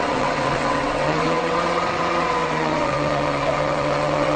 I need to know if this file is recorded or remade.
remade